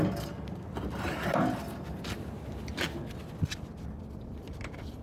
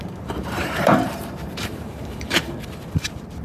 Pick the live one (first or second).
first